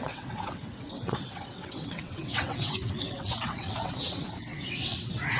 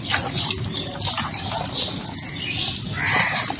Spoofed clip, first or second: first